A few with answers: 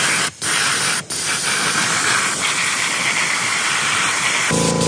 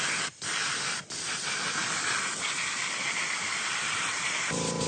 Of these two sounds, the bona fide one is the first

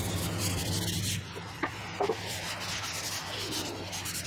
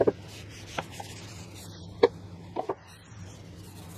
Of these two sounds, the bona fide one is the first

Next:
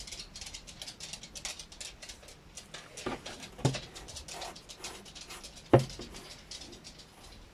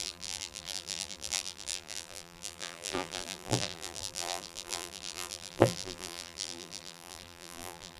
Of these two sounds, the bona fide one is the first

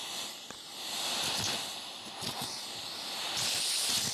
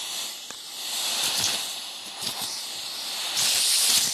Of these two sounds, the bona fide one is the first